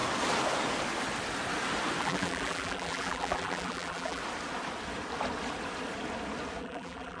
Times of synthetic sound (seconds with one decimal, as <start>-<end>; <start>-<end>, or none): 2.0-4.2; 6.6-7.2